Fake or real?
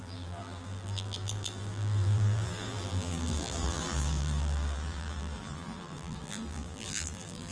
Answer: fake